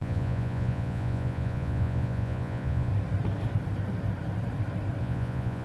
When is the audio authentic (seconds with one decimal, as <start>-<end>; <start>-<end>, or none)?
2.9-5.0